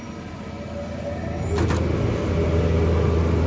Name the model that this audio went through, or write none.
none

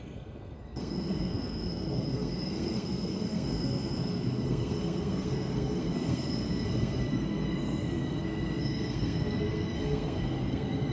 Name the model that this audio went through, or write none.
codec, SNAC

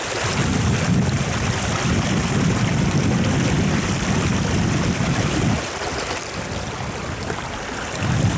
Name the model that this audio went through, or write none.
none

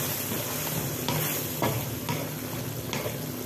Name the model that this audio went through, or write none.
none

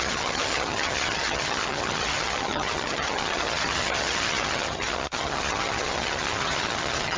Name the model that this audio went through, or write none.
vocoder, HiFi-GAN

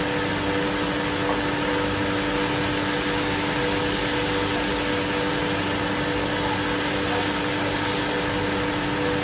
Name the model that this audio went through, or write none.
none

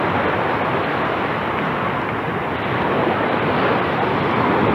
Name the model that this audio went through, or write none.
none